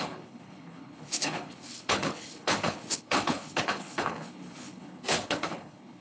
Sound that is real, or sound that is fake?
fake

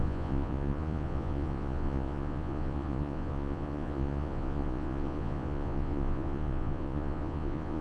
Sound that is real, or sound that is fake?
fake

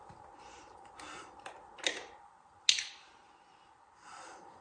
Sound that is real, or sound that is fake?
real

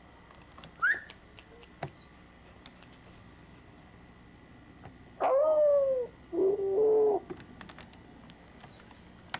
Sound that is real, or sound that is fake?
real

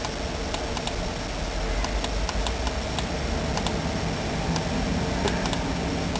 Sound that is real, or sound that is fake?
real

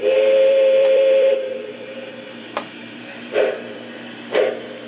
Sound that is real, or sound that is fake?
fake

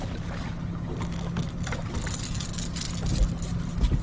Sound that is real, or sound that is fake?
real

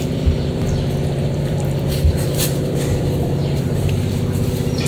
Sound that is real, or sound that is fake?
fake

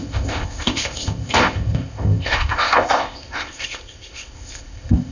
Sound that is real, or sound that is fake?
fake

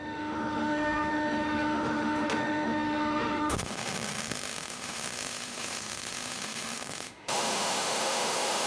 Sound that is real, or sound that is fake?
fake